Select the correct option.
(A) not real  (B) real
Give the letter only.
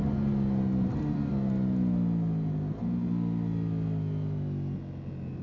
B